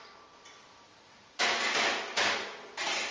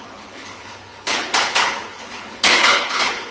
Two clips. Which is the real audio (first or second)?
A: first